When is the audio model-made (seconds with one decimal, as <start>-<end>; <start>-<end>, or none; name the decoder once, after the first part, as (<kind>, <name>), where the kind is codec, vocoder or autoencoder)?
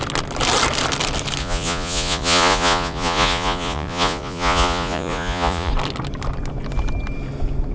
1.4-5.7 (vocoder, Vocos)